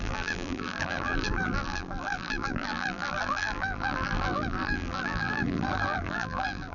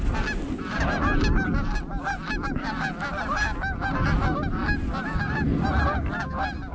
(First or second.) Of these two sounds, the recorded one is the second